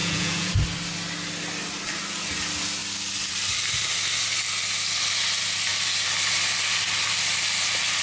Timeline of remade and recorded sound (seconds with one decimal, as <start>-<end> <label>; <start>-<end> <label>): 0.0-0.5 remade; 0.5-8.0 recorded